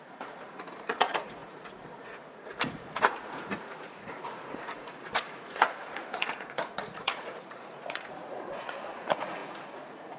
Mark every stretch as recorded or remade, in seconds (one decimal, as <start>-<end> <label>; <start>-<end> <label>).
0.0-10.2 remade